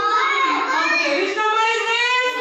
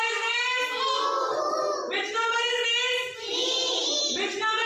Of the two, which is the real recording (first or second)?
second